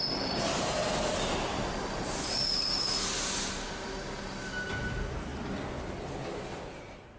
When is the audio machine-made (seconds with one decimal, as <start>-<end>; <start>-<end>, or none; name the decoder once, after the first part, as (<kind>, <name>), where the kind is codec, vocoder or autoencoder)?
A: none